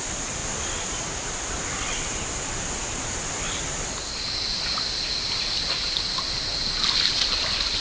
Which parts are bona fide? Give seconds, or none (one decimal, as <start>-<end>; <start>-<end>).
0.0-7.8